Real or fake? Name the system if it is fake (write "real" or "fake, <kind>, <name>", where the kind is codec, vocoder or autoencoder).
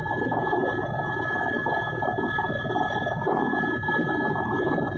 real